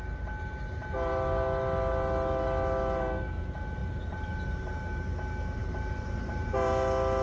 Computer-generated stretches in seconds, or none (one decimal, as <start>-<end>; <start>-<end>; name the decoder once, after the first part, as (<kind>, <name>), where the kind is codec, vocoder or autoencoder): 3.8-5.1 (vocoder, BigVGAN v2); 5.6-6.5